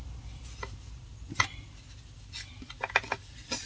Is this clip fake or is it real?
real